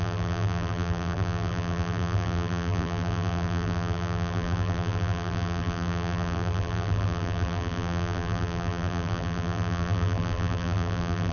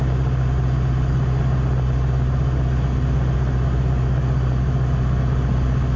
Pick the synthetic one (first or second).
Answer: first